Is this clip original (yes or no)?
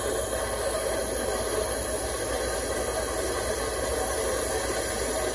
yes